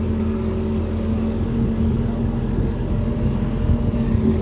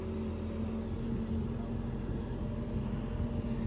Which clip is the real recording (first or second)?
second